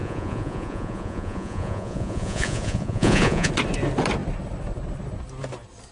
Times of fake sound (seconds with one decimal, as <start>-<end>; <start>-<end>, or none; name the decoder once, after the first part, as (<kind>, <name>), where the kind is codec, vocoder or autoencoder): 0.0-3.5 (vocoder, Vocos)